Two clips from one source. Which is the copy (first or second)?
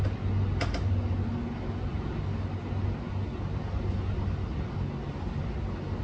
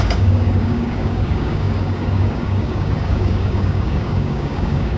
second